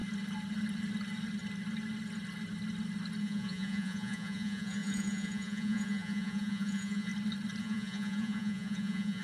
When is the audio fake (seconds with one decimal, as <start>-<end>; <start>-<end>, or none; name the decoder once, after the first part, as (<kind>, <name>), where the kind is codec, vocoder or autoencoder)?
3.2-7.1 (vocoder, Vocos); 7.6-9.2